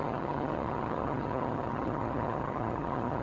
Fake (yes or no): yes